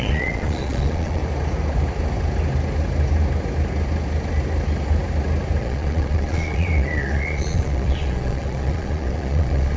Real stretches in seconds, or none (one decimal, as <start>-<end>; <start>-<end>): 1.2-5.6